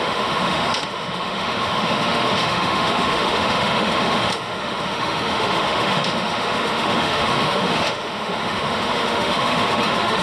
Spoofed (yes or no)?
yes